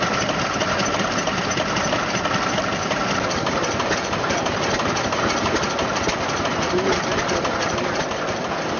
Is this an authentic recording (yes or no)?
yes